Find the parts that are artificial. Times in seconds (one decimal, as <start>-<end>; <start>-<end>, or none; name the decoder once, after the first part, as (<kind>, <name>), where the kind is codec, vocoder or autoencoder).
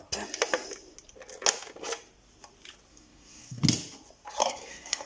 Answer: 2.9-3.6 (codec, SNAC); 4.4-5.1